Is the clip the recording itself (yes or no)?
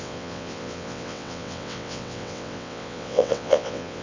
no